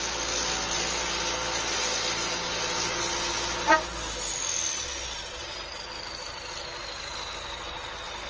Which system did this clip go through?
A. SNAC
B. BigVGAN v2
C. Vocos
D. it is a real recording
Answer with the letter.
D